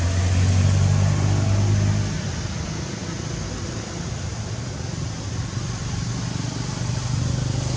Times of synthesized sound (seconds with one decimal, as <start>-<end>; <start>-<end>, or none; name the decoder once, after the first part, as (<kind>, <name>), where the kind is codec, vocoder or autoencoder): none